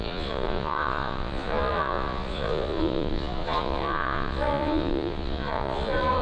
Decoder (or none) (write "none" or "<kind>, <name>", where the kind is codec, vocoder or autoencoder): vocoder, Vocos